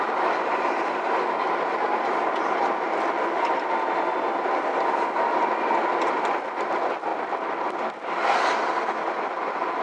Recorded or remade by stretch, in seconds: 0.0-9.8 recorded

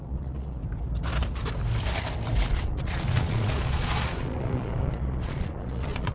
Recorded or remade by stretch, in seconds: 0.0-0.6 remade; 0.6-2.5 recorded; 2.5-6.1 remade

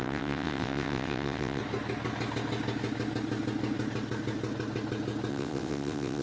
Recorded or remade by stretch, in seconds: 0.0-1.6 remade; 1.6-5.3 recorded; 5.3-6.2 remade